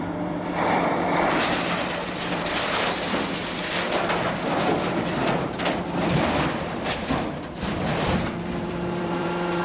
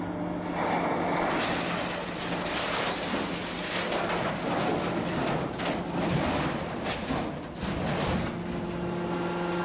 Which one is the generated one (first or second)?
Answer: first